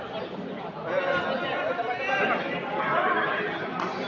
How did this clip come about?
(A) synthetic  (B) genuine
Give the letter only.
B